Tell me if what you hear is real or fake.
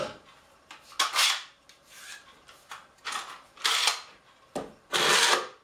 real